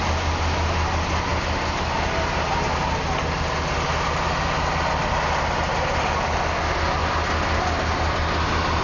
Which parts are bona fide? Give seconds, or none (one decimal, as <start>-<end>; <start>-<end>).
0.0-8.8